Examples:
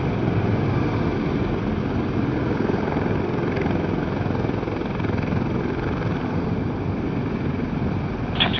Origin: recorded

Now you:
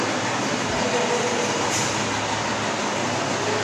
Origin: recorded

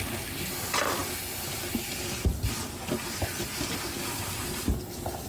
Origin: recorded